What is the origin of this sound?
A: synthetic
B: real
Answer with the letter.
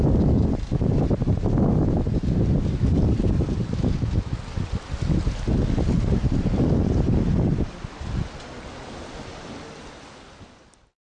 B